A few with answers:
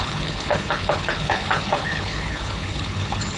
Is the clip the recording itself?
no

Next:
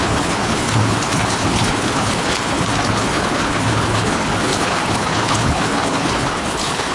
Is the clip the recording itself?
no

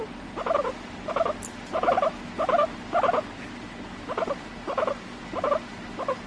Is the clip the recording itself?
yes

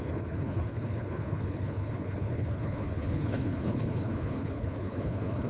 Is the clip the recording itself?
no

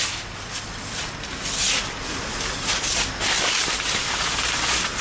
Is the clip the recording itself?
yes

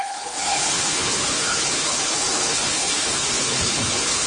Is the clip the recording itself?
no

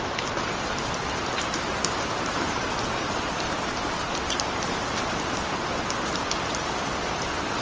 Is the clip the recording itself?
yes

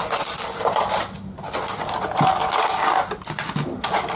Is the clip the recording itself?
yes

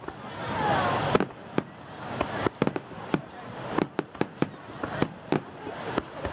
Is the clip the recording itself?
yes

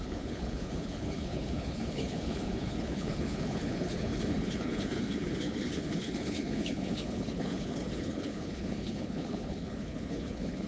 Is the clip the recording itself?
no